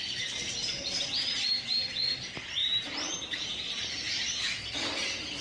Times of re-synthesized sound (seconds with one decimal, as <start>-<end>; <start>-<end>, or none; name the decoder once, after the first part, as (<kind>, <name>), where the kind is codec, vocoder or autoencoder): 0.6-1.4 (vocoder, BigVGAN v2); 2.6-4.3